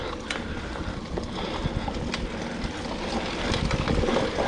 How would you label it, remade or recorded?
recorded